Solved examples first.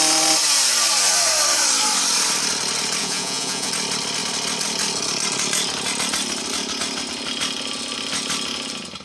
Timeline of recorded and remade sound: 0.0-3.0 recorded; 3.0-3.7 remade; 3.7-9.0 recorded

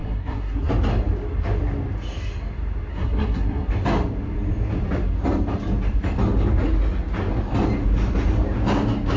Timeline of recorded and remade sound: 0.0-0.7 remade; 0.7-2.9 recorded; 2.9-3.7 remade; 3.7-9.2 recorded

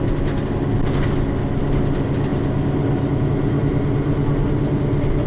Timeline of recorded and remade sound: 0.0-5.3 recorded